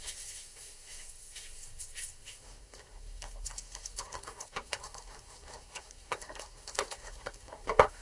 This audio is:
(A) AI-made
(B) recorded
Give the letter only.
A